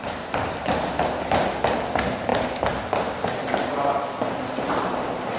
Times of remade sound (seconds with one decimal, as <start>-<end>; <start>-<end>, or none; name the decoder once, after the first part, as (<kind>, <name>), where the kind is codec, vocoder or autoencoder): none